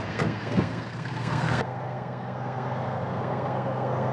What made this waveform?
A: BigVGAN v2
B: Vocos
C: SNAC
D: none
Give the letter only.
C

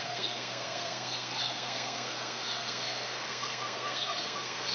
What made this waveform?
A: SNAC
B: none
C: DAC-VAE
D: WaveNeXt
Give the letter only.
A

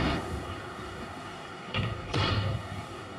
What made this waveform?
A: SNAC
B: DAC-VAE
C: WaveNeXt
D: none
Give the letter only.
A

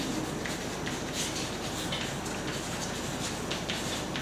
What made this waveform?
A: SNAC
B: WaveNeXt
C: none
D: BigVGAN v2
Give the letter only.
C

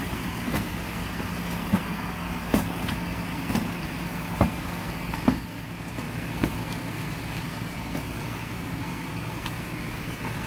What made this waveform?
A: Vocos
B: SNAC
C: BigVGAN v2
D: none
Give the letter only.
B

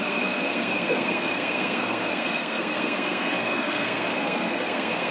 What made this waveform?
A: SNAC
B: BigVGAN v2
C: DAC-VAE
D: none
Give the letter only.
A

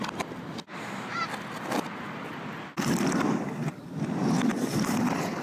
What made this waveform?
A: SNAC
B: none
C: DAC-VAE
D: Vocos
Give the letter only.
B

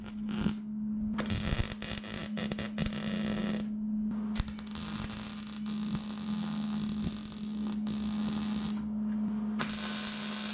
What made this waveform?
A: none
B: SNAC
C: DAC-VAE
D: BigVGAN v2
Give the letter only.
A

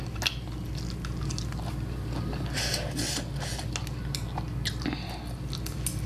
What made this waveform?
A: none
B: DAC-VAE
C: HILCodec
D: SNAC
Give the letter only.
A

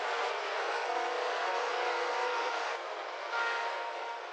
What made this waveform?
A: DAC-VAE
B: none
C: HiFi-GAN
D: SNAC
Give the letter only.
D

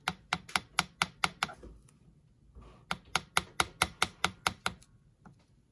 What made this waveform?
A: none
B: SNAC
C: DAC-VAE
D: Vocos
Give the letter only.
A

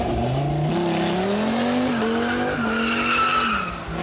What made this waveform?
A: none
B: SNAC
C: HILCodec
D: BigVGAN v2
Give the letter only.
A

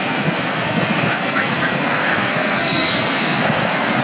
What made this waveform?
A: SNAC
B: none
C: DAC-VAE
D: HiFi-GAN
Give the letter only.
A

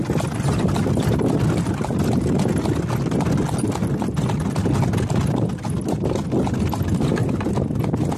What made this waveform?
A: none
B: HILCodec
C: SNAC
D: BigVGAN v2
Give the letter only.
A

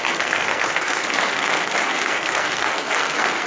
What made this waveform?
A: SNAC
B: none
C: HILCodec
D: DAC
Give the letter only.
A